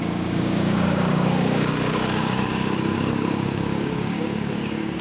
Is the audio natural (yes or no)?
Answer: no